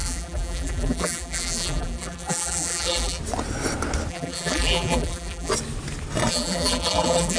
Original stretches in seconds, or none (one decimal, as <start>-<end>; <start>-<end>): 3.2-4.1; 5.5-6.3